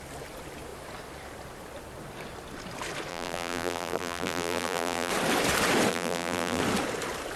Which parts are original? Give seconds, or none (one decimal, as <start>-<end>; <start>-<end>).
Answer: 0.0-3.1; 5.1-5.9; 6.6-7.4